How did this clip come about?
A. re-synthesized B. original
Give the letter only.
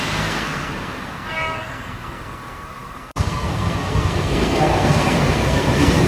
A